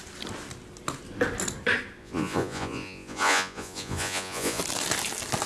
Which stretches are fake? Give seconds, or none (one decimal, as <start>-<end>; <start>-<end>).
2.0-4.6